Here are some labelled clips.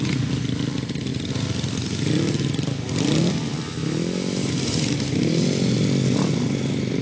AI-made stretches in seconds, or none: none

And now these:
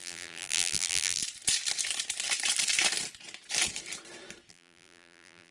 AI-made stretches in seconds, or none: 0.0-1.2; 4.5-5.5

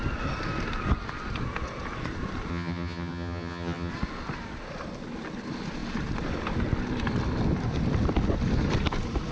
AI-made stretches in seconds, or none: 2.5-3.9

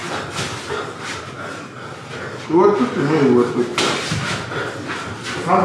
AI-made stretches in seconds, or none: 3.7-4.5

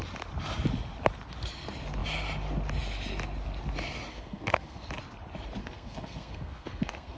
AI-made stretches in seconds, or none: 4.1-4.9; 5.6-7.2